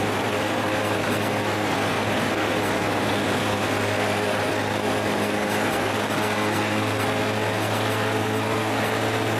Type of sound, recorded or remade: remade